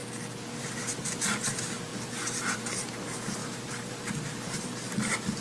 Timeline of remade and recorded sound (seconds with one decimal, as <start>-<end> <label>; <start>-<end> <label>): 0.0-0.8 recorded; 0.8-5.4 remade